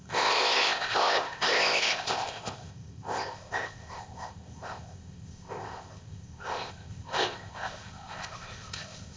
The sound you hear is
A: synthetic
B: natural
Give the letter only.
A